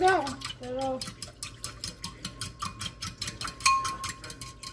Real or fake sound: real